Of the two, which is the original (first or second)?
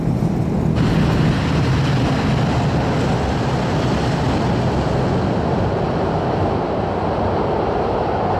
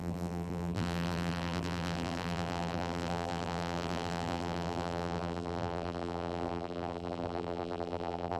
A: first